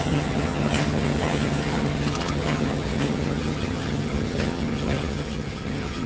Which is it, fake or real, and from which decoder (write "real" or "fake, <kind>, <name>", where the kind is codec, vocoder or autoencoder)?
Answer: fake, vocoder, HiFi-GAN